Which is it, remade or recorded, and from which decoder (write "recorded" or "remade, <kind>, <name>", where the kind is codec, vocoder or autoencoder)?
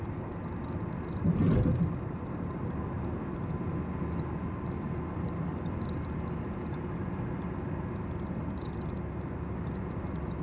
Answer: recorded